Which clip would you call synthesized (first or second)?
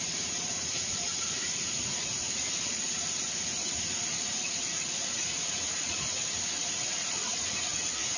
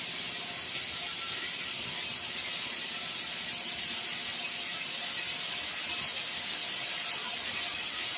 first